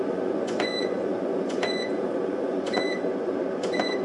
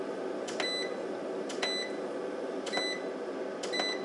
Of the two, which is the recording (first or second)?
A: second